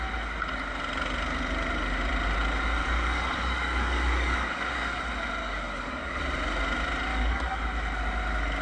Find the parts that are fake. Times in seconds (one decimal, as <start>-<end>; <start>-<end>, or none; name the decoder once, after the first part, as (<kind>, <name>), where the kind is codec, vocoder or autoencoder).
2.8-5.0 (codec, DAC); 5.4-6.2; 7.1-7.6